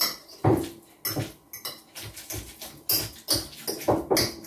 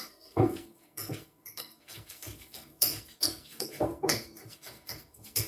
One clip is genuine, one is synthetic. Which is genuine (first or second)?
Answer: first